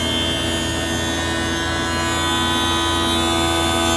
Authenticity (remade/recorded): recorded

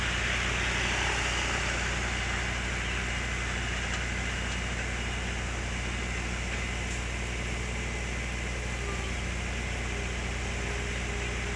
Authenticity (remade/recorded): recorded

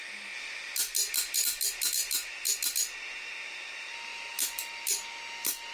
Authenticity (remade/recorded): recorded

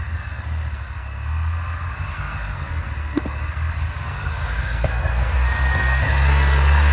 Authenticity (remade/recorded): remade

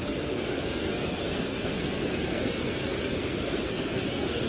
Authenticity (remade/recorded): remade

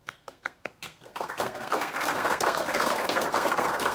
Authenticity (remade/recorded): remade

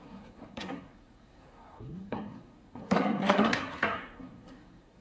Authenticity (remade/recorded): remade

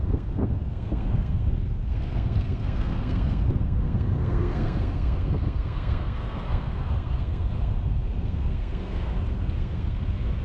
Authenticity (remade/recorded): remade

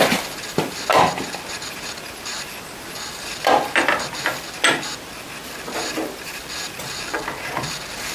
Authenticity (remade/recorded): recorded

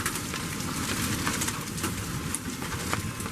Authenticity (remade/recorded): recorded